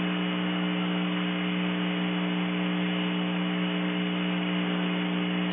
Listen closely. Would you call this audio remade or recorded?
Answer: recorded